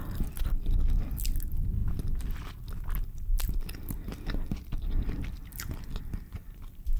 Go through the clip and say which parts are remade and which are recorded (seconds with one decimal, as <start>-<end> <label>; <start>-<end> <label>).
0.0-7.0 recorded